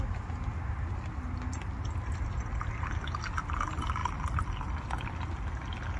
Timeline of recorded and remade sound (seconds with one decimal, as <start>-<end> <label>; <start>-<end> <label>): 0.0-6.0 recorded